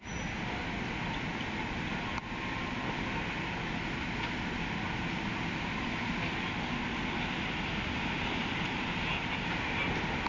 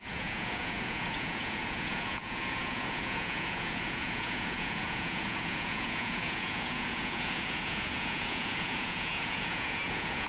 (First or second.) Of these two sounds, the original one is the first